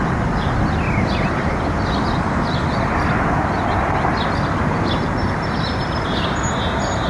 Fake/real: real